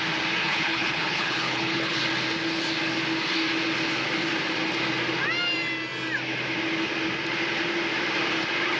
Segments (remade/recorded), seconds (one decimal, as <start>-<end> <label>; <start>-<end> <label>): 0.0-0.4 recorded; 0.4-2.0 remade; 2.0-8.8 recorded